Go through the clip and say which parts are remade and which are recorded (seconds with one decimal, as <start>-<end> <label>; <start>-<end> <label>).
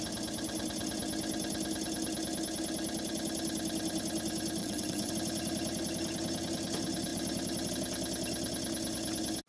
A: 0.0-4.6 recorded; 4.6-5.1 remade; 5.1-9.5 recorded